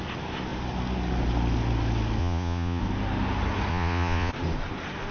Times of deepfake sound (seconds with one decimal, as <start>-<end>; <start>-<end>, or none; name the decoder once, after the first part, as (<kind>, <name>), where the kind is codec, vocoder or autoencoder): 2.2-2.8 (vocoder, Vocos); 3.7-4.3